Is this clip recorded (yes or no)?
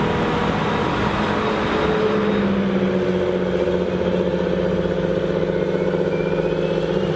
yes